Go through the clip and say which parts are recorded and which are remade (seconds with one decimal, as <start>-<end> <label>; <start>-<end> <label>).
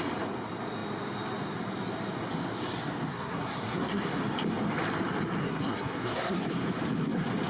0.0-3.1 recorded; 3.1-4.2 remade; 4.2-5.4 recorded; 5.4-6.5 remade; 6.5-7.5 recorded